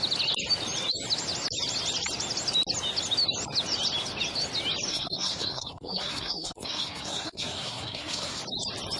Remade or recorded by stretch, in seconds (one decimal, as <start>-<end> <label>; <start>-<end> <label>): 0.0-4.9 recorded; 4.9-8.4 remade; 8.4-9.0 recorded